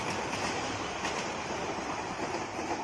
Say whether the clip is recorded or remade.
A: remade